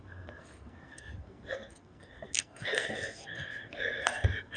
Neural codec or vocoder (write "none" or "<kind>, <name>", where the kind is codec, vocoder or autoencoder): codec, SNAC